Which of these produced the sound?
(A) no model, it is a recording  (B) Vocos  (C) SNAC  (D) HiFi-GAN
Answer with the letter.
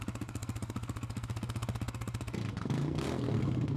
C